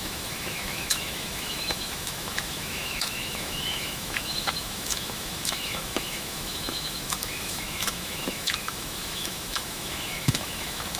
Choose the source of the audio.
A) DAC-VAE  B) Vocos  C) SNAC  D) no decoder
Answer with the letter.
A